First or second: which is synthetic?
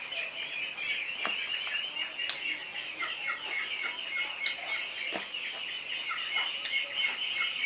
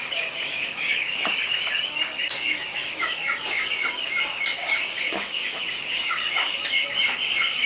second